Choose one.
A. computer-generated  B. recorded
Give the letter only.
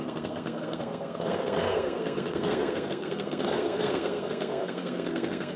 A